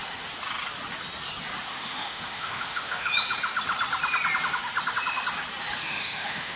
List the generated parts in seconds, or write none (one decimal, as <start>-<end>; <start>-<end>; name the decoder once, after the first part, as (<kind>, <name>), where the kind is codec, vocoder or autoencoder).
1.7-3.1 (autoencoder, DAC-VAE); 5.8-6.6